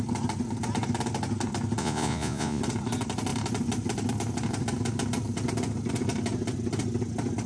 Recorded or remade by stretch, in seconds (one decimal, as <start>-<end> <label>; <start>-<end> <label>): 0.0-1.8 recorded; 1.8-2.6 remade; 2.6-7.5 recorded